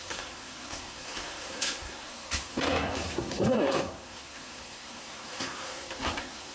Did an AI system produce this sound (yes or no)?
yes